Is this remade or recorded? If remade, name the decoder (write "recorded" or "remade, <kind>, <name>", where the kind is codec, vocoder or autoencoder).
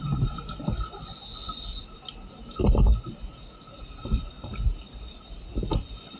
recorded